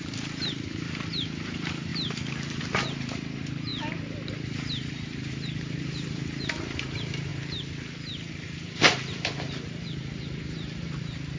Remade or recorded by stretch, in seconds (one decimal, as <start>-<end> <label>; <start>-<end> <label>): 0.0-7.3 remade; 7.3-8.3 recorded; 8.3-11.4 remade